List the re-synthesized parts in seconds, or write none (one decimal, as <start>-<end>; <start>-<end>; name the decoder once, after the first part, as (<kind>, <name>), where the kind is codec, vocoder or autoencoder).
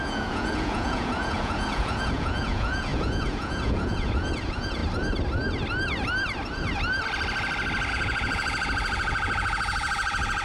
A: 0.0-4.8 (vocoder, Vocos); 7.9-10.4